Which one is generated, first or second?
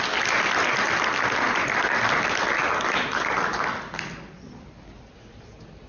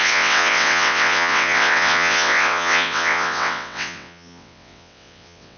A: second